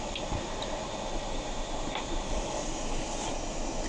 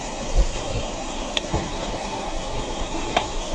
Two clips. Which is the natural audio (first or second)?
first